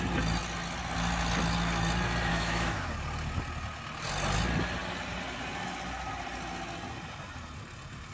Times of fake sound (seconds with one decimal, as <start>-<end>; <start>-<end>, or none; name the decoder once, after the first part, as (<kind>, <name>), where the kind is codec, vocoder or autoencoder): 2.3-2.9 (autoencoder, DAC-VAE)